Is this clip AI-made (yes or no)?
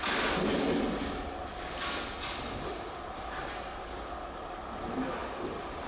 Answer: no